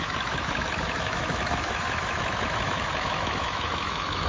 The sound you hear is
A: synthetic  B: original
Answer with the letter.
A